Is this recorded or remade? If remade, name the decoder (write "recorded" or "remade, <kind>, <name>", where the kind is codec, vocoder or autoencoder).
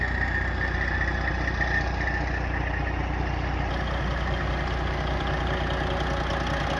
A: recorded